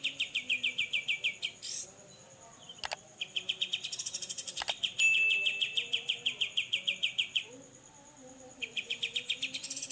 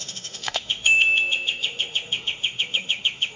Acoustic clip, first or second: first